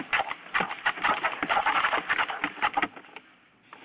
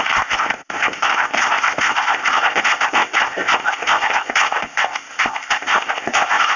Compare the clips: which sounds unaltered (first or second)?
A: first